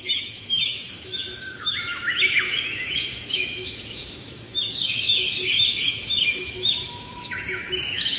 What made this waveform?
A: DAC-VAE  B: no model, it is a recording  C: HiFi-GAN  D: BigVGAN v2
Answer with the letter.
A